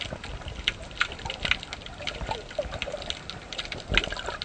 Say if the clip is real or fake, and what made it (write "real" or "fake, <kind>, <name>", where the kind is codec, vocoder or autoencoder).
real